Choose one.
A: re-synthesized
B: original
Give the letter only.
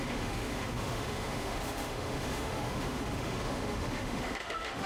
A